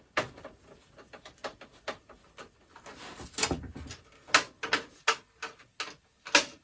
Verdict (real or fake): real